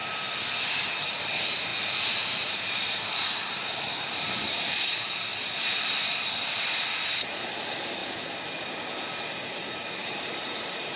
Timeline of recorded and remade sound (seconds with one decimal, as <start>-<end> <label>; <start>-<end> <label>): 0.0-1.0 recorded; 1.0-1.7 remade; 1.7-2.3 recorded; 2.3-5.3 remade; 5.3-6.5 recorded; 6.5-8.0 remade; 8.0-10.0 recorded; 10.0-11.0 remade